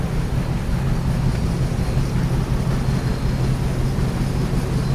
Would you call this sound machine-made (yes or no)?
no